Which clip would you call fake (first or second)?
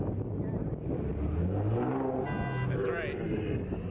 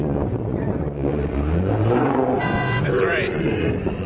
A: second